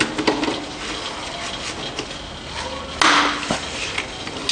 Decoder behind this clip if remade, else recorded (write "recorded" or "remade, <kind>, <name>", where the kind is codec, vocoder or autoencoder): recorded